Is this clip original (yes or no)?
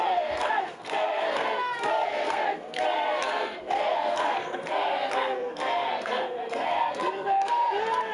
no